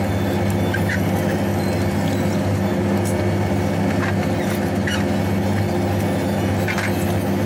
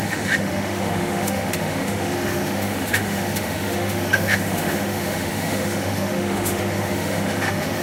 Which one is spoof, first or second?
second